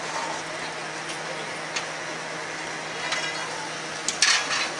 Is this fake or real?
real